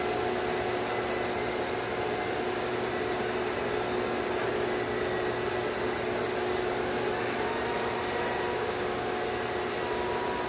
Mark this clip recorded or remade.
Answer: recorded